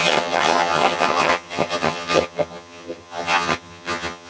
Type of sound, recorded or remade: remade